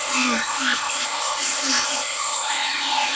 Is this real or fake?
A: fake